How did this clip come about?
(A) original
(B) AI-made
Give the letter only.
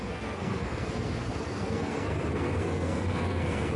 B